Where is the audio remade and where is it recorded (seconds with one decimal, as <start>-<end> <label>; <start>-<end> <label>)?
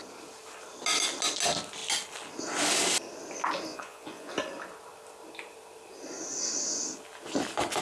0.0-3.7 recorded; 3.7-4.3 remade; 4.3-7.8 recorded